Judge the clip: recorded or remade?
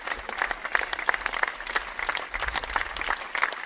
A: recorded